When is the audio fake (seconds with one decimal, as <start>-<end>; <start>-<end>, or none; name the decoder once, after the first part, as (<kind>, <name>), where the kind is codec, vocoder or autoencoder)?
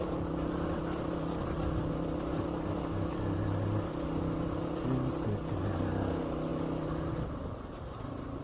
none